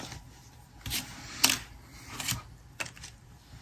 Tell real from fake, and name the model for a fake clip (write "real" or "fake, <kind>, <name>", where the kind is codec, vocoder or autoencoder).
real